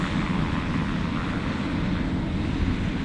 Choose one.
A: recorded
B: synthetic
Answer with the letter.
A